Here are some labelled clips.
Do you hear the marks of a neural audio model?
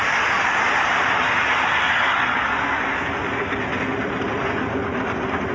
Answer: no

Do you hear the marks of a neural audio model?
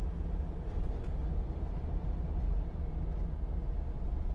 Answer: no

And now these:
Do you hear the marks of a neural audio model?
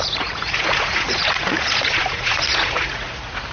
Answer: yes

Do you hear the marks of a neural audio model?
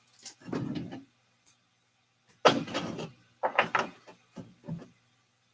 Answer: no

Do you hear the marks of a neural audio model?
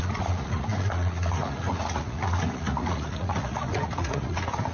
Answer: yes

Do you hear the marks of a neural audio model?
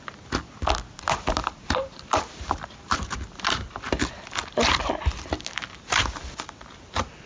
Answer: no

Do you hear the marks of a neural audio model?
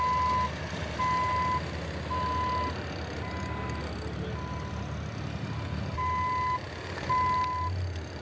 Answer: no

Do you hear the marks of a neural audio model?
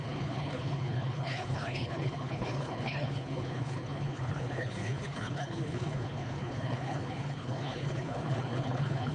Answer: yes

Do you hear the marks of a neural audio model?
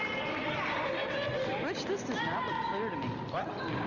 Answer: no